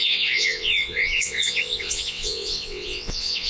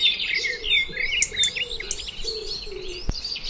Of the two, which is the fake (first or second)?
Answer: first